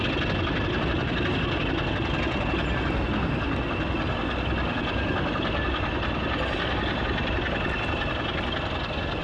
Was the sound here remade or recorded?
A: recorded